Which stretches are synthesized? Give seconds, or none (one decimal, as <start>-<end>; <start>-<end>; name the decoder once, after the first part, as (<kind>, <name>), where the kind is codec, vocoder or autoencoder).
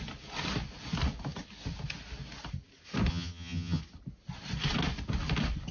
3.1-3.8 (vocoder, HiFi-GAN)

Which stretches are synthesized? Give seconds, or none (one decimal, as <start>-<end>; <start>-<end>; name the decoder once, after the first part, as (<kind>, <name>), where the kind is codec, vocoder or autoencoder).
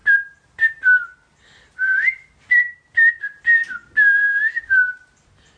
none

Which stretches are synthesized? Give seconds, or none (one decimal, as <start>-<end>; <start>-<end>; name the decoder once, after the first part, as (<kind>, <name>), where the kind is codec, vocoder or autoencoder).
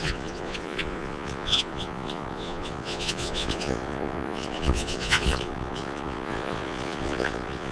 0.0-7.7 (vocoder, Vocos)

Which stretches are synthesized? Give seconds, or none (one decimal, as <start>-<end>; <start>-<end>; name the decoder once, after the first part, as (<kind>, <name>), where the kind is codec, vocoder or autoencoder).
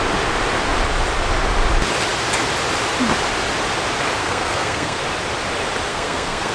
4.2-5.0 (codec, SNAC); 5.9-6.5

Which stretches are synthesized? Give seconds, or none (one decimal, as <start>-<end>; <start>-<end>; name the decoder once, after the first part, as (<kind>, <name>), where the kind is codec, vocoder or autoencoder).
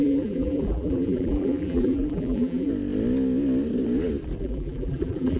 0.0-2.7 (vocoder, BigVGAN v2); 4.4-5.4